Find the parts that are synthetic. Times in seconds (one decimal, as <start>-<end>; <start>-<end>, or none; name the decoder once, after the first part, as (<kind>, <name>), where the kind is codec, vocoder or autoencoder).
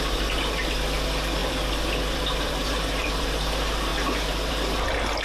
1.4-3.2 (vocoder, BigVGAN v2)